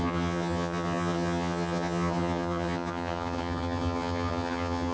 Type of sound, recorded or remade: remade